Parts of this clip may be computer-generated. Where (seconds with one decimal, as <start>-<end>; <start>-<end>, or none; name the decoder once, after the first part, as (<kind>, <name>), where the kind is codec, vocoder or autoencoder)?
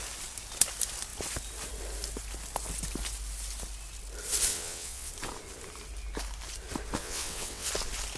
4.5-5.1 (vocoder, WaveNeXt); 7.0-7.7